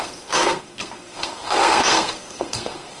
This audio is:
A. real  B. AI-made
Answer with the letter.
B